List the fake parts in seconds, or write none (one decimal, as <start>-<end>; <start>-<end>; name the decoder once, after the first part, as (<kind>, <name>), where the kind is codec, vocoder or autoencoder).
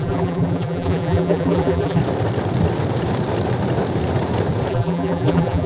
0.0-2.0 (vocoder, BigVGAN v2); 4.7-5.7